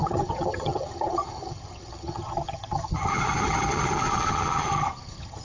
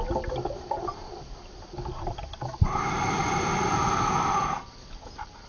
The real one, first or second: second